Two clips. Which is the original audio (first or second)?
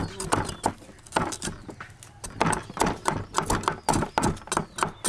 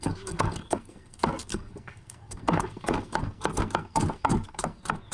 first